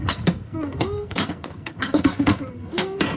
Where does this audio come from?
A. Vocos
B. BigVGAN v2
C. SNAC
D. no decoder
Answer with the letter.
C